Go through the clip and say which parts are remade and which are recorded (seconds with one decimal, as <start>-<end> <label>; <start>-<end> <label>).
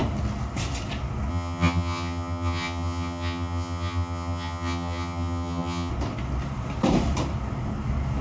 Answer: 0.0-1.3 recorded; 1.3-5.9 remade; 5.9-8.2 recorded